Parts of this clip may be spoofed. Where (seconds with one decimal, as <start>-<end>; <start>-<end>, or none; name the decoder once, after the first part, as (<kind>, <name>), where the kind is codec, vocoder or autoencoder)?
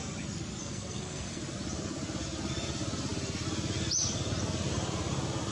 0.6-1.4 (codec, SNAC)